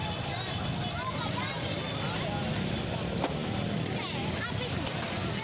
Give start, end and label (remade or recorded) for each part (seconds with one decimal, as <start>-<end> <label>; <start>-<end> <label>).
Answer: 0.0-5.4 recorded

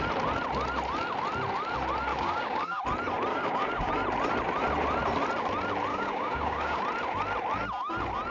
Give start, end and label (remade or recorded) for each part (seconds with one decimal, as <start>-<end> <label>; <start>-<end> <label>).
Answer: 0.0-2.1 recorded; 2.1-2.8 remade; 2.8-3.3 recorded; 3.3-3.9 remade; 3.9-5.9 recorded; 5.9-6.8 remade; 6.8-8.3 recorded